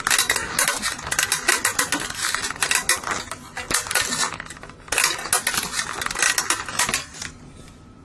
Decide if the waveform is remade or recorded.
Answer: recorded